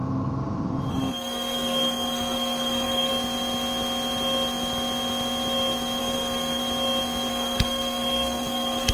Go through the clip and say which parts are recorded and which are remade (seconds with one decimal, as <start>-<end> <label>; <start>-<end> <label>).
0.0-0.9 recorded; 0.9-3.1 remade; 3.1-6.0 recorded; 6.0-6.6 remade; 6.6-7.3 recorded; 7.3-8.9 remade